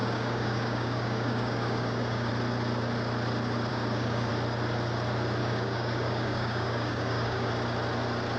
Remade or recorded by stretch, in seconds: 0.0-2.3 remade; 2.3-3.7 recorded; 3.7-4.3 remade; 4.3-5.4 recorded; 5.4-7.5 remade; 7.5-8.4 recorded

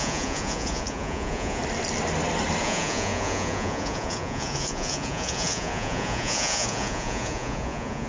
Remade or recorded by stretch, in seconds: 0.0-1.6 remade; 1.6-2.6 recorded; 2.6-8.1 remade

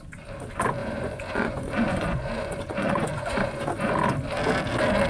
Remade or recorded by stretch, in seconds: 0.0-0.8 recorded; 0.8-3.9 remade; 3.9-5.1 recorded